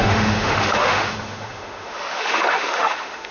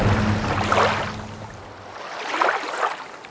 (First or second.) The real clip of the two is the second